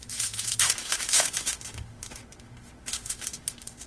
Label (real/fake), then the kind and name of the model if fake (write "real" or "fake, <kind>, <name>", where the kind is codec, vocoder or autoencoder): fake, autoencoder, DAC-VAE